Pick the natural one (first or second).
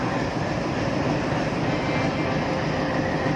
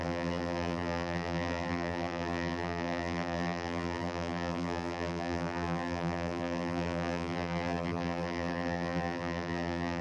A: first